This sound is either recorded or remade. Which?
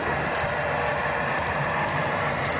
recorded